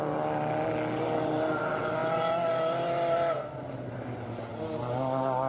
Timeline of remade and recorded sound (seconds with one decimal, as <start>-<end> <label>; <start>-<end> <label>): 0.0-5.5 recorded